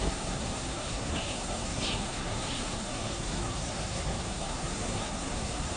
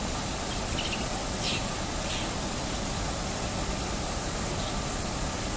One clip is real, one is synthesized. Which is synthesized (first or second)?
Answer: first